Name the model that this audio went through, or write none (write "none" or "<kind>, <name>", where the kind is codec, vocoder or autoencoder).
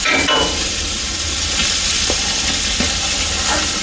none